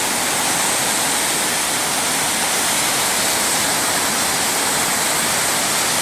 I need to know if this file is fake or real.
real